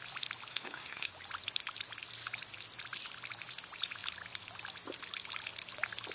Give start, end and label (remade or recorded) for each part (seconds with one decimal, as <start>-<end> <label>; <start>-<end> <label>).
0.0-0.5 recorded; 0.5-1.1 remade; 1.1-6.1 recorded